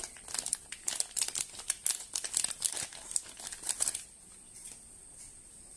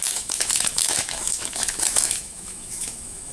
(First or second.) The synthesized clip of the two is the second